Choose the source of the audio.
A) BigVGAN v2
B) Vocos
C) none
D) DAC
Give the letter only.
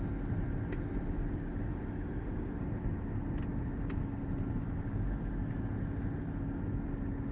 C